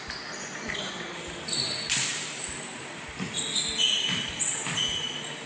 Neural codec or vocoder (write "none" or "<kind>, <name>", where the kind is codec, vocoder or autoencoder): none